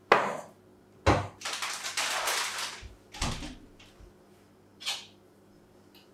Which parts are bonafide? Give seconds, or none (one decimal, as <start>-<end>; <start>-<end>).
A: 0.0-6.1

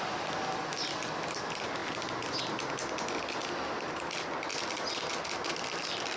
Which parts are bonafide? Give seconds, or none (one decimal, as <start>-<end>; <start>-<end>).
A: 0.0-6.2

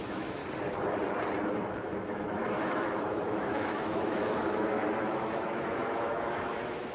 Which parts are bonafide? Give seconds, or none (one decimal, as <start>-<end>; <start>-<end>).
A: 0.4-1.5

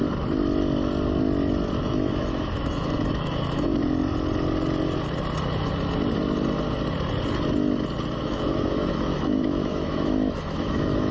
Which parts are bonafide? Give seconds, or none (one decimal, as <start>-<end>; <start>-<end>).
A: 0.0-1.8; 3.7-8.2

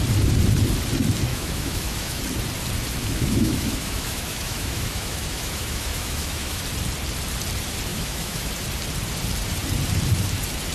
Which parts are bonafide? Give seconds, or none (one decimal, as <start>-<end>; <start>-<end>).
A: 0.0-1.3; 2.2-3.0; 6.6-7.9; 8.5-10.7

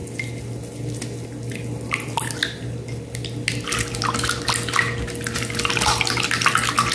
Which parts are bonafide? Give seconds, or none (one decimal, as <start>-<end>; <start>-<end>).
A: 0.0-6.9

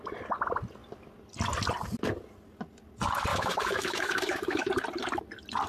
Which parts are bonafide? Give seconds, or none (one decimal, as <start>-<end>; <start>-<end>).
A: 0.0-3.3; 4.7-5.7

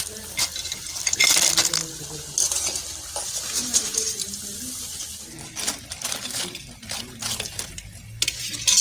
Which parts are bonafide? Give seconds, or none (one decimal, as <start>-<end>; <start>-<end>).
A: 0.0-8.8